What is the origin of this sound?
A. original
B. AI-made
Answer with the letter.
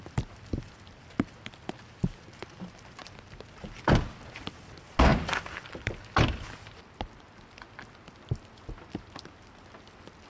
A